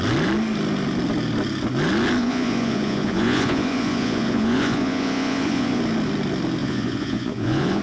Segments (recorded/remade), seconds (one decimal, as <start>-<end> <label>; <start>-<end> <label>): 0.0-2.2 recorded; 2.2-5.8 remade; 5.8-6.6 recorded; 6.6-7.8 remade